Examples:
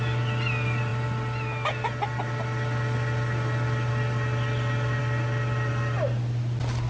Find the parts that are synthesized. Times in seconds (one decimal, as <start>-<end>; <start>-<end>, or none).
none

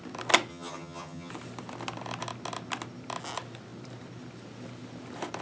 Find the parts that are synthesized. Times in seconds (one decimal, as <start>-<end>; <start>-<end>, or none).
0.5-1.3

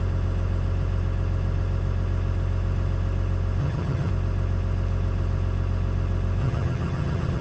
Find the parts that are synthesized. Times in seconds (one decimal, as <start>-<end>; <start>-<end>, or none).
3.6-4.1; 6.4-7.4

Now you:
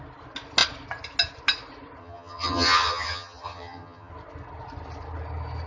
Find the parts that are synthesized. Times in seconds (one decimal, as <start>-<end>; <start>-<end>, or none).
2.0-4.1